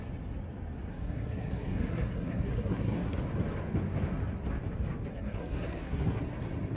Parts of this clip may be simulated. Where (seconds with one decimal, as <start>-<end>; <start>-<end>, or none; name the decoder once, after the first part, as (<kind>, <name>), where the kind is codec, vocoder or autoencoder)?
0.9-3.2 (codec, SNAC); 5.1-6.2